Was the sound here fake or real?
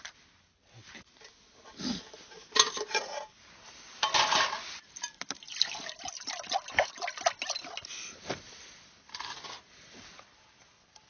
real